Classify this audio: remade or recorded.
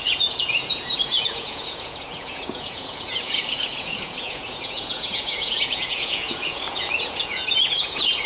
remade